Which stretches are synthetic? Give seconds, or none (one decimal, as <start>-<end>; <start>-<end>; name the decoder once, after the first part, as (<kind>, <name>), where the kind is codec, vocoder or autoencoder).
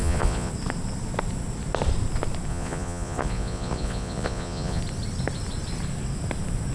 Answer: 0.0-0.5 (vocoder, Vocos); 2.5-4.8